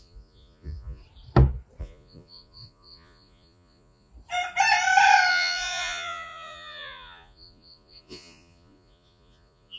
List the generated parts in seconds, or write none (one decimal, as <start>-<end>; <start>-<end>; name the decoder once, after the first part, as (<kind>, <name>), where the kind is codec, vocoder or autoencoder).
0.0-1.0 (vocoder, Vocos); 1.8-4.1; 5.3-9.8

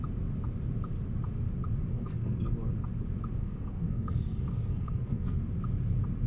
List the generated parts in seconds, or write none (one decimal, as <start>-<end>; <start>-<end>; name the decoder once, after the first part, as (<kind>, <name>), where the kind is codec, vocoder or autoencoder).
1.9-2.5 (codec, SNAC); 3.4-5.4

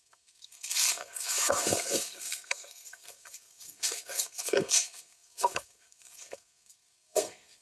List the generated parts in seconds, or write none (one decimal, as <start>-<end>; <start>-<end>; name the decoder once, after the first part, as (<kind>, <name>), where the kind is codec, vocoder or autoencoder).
0.0-7.6 (codec, SNAC)

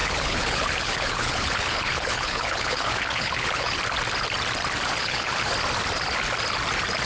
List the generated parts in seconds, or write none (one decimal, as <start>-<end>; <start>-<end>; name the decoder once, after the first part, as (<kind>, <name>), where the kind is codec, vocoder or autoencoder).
0.0-3.8 (codec, HILCodec); 5.0-5.5

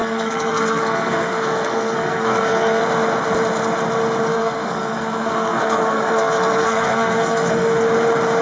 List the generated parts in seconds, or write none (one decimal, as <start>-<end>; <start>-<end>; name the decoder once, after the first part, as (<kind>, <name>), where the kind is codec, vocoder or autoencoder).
0.0-2.8 (codec, SNAC); 4.3-7.8

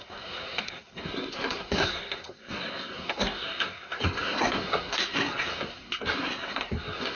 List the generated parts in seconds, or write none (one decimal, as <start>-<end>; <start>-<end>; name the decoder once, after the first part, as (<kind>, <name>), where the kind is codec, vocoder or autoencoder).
0.0-7.1 (codec, SNAC)

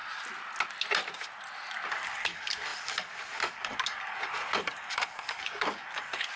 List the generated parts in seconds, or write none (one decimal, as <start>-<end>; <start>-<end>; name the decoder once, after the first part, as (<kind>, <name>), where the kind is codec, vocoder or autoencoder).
1.9-6.4 (codec, DAC)

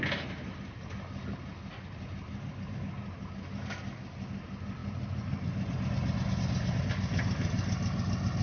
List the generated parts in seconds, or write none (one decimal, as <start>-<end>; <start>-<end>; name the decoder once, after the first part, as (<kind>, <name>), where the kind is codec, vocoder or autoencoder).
none